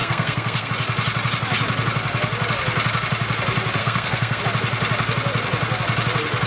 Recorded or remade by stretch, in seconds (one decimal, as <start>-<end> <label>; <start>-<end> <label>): 0.0-0.7 remade; 0.7-3.8 recorded; 3.8-4.4 remade; 4.4-6.5 recorded